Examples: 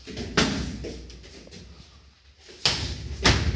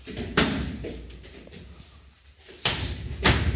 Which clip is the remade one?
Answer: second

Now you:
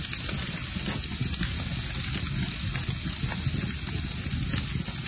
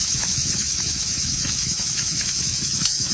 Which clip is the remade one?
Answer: second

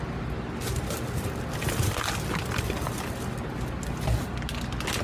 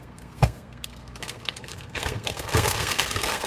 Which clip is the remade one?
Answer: second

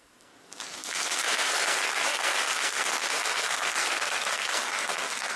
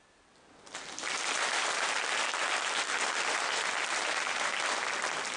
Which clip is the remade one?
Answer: first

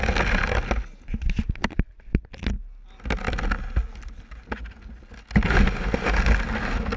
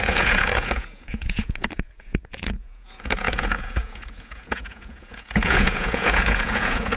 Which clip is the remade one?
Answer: second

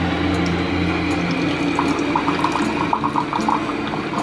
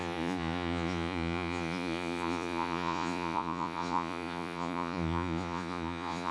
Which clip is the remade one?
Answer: second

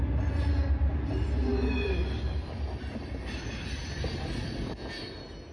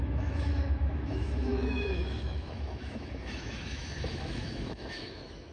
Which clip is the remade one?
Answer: second